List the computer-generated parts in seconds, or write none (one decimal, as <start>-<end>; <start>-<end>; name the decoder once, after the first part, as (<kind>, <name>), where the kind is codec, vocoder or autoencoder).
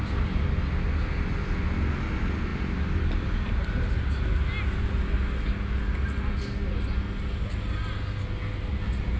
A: none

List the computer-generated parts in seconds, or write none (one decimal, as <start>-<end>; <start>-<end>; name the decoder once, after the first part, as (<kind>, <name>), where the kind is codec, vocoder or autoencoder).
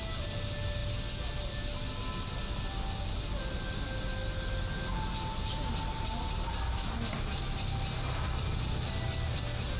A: none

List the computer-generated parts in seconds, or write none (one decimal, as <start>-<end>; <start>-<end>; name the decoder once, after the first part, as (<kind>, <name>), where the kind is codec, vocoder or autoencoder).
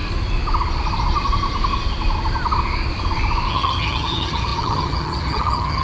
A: 3.5-5.8 (vocoder, HiFi-GAN)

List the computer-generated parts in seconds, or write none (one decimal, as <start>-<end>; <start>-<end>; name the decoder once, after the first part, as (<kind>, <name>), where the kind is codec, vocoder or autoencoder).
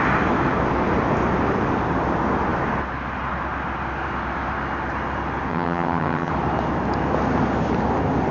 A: 5.5-6.3 (vocoder, HiFi-GAN)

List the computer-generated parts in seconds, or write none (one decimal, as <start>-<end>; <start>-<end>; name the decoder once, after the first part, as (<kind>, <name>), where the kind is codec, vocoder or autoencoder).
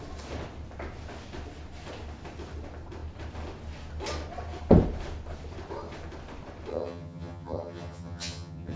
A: 6.7-8.8 (vocoder, HiFi-GAN)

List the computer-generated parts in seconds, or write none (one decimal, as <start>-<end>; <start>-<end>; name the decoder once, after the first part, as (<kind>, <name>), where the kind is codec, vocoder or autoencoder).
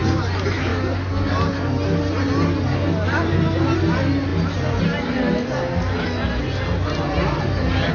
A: none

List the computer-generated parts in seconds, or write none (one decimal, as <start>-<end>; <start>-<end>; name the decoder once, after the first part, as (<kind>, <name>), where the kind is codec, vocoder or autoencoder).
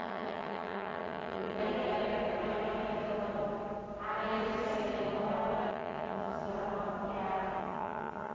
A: 0.0-1.6 (vocoder, HiFi-GAN); 5.7-6.5; 7.6-8.3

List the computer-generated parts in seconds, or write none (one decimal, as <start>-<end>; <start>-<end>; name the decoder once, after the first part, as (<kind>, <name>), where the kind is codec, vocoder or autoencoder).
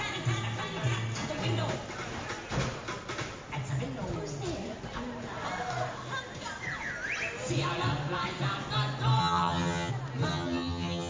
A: 9.2-9.9 (vocoder, HiFi-GAN); 10.3-11.1